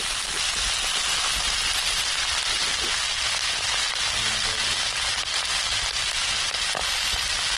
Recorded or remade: recorded